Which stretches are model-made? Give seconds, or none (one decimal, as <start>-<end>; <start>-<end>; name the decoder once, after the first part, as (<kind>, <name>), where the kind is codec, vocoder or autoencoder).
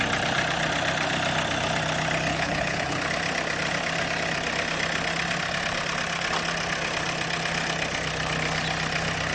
2.3-3.0 (codec, HILCodec)